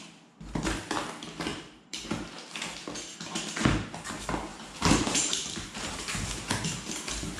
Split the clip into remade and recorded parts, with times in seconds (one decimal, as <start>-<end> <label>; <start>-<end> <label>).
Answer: 0.0-1.5 recorded; 1.5-2.1 remade; 2.1-4.5 recorded; 4.5-6.3 remade; 6.3-7.4 recorded